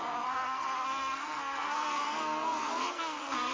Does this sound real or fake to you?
fake